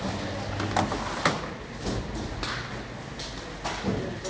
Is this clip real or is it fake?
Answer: real